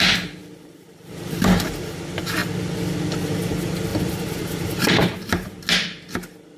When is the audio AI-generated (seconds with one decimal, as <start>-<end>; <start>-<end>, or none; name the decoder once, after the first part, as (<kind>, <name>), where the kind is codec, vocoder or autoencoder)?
0.4-2.0 (vocoder, BigVGAN v2); 3.9-5.6